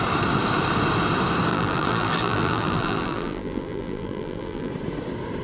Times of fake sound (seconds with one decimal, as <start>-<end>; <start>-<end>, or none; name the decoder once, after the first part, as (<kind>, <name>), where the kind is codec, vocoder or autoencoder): 1.5-4.7 (vocoder, BigVGAN v2)